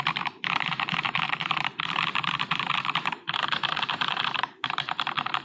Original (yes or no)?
no